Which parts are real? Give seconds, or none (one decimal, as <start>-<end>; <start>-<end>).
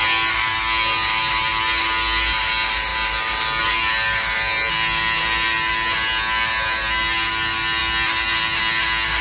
0.0-9.2